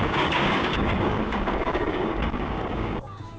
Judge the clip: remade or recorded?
remade